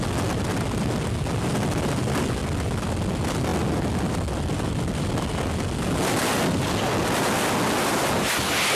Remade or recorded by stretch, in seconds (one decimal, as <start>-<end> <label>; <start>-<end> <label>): 0.0-8.7 recorded